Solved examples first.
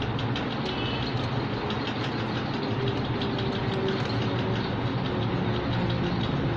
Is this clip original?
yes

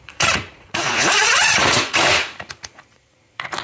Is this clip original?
no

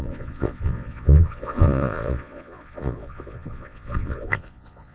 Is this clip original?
no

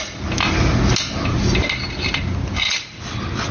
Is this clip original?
yes